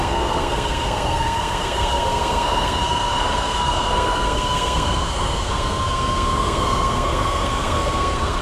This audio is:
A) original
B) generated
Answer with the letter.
B